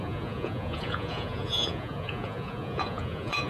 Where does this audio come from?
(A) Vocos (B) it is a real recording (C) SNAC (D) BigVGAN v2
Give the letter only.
A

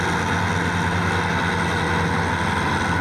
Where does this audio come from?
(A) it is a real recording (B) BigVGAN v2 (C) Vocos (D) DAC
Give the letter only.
A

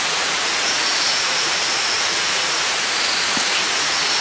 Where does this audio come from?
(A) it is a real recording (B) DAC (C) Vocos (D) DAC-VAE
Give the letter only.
C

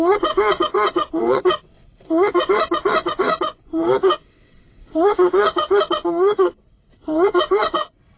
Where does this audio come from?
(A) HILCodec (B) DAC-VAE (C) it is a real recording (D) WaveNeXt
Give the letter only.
D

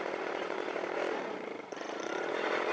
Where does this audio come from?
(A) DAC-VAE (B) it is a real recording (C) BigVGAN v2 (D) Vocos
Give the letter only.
D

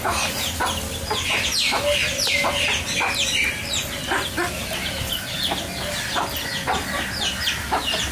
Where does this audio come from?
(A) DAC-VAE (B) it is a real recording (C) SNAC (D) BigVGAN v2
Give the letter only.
B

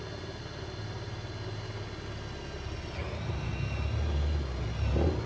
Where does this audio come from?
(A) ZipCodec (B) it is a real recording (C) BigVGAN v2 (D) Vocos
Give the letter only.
B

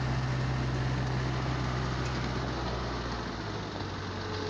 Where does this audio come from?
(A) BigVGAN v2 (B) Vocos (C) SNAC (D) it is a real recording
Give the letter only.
D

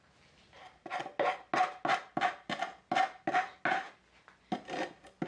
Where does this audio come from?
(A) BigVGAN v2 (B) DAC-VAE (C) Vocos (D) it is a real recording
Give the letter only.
D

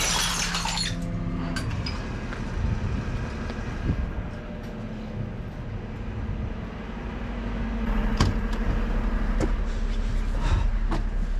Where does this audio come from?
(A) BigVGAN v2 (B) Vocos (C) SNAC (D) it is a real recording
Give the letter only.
D